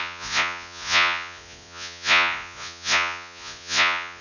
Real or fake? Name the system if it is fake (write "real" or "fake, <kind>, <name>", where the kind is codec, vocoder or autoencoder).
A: fake, vocoder, Vocos